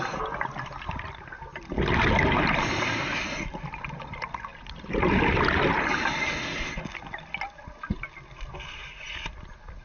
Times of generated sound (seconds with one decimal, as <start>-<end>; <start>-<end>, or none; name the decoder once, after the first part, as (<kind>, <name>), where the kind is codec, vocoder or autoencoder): none